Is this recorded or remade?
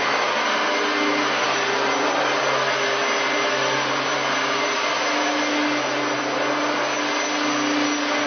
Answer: recorded